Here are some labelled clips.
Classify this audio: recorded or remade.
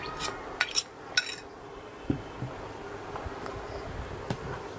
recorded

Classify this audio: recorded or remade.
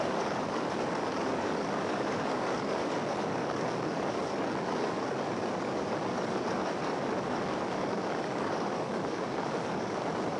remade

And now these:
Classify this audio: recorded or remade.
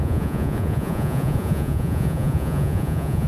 remade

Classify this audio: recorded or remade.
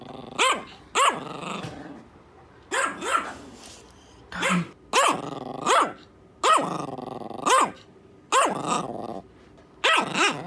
recorded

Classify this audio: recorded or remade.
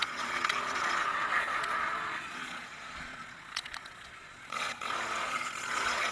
remade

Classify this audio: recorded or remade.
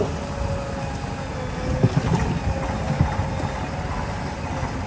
recorded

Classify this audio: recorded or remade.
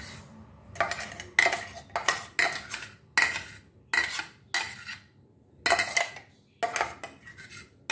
recorded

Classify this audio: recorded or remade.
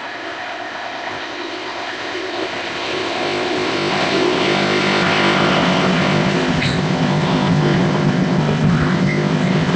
remade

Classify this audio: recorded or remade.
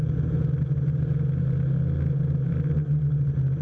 recorded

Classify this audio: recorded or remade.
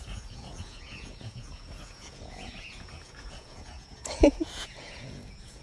remade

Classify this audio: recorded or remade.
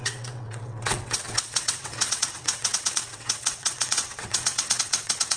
remade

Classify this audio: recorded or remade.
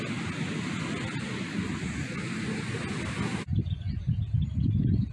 recorded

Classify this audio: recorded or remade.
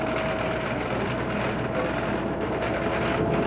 recorded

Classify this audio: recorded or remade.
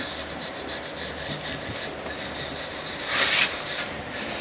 recorded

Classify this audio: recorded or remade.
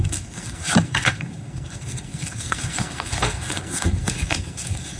remade